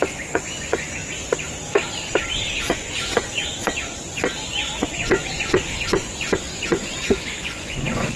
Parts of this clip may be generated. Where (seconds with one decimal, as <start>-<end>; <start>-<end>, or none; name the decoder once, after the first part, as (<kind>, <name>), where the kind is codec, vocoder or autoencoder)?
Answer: 0.0-1.0 (vocoder, Vocos); 2.7-8.2